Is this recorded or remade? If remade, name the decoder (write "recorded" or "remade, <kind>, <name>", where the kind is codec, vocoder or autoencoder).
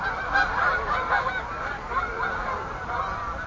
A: remade, vocoder, BigVGAN v2